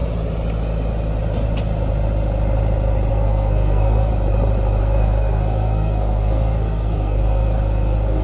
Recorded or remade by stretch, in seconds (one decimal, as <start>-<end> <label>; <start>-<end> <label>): 0.0-3.1 recorded; 3.1-4.1 remade; 4.1-4.8 recorded; 4.8-8.2 remade